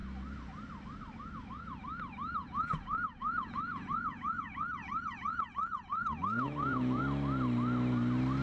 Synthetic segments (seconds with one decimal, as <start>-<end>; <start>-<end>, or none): 2.4-7.0